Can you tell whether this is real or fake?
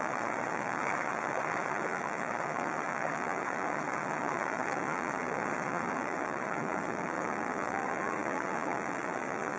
fake